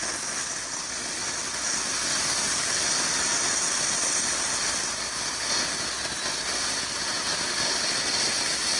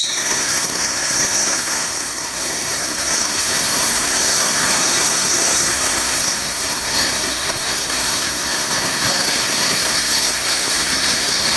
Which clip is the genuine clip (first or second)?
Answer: first